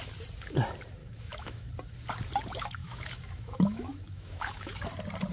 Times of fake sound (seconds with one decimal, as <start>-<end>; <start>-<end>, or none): 1.0-1.7; 2.8-4.8